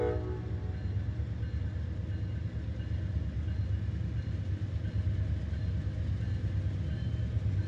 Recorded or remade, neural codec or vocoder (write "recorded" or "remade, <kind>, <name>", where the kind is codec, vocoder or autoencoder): recorded